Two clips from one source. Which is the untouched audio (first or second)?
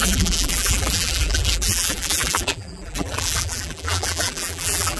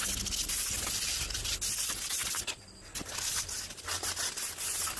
second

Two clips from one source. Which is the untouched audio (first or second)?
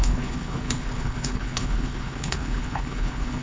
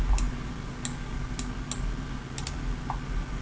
second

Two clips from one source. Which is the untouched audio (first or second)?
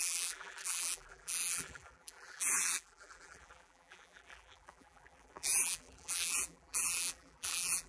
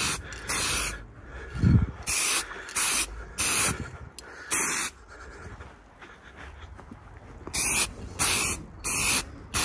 second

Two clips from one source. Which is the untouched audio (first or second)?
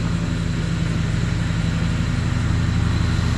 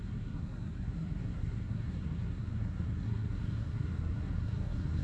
first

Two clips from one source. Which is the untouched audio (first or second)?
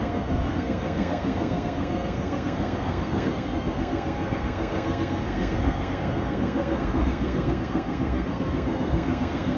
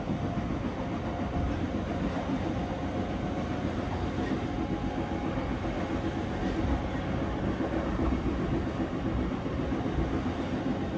second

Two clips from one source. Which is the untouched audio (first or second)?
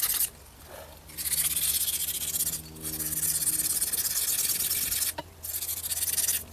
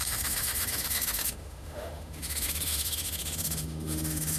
first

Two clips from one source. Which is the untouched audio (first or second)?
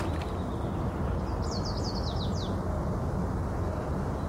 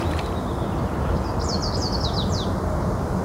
first